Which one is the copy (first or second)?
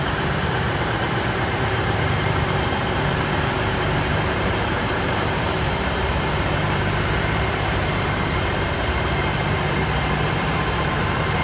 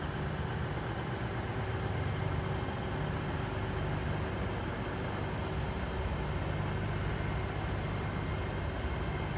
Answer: first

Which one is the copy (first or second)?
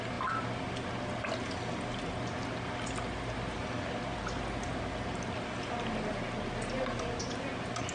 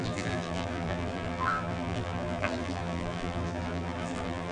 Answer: second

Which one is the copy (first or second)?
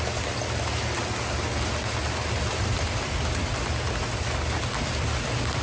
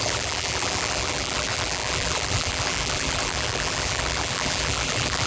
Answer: second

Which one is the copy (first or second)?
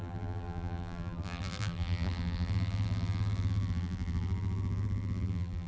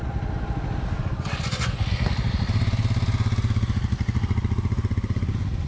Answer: first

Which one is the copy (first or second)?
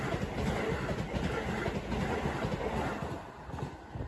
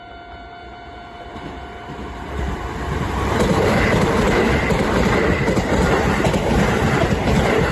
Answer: second